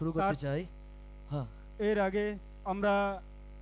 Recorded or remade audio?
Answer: remade